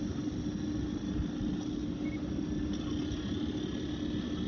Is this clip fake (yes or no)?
no